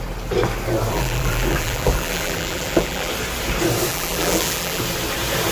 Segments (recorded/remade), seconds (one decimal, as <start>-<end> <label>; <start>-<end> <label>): 0.0-0.9 recorded; 0.9-3.1 remade; 3.1-3.9 recorded; 3.9-4.8 remade; 4.8-5.5 recorded